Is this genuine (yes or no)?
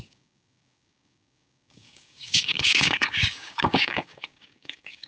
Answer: no